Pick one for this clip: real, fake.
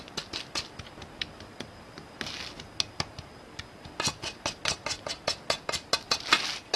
real